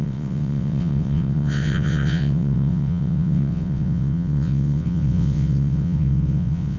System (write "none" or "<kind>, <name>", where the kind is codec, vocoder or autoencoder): vocoder, WaveNeXt